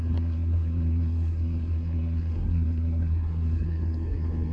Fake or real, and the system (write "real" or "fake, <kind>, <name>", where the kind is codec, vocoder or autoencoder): fake, codec, SNAC